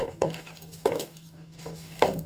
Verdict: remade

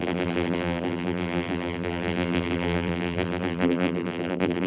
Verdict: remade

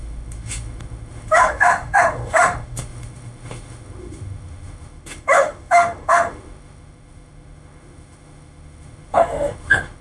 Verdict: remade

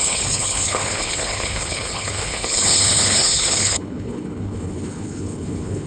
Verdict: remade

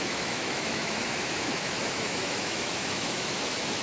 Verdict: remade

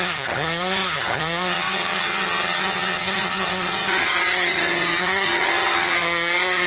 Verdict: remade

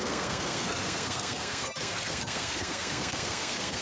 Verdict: remade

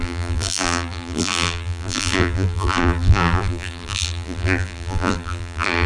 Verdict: remade